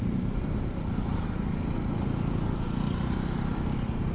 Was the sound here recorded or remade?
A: remade